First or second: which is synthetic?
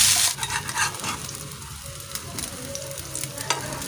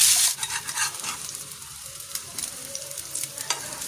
second